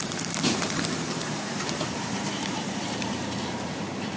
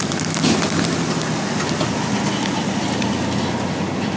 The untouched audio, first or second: second